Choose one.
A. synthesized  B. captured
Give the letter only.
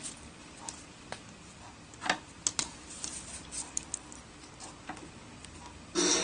B